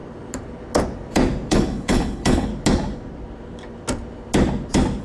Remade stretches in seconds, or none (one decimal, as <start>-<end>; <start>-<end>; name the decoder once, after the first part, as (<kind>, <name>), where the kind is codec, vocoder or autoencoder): 1.5-2.5 (codec, HILCodec)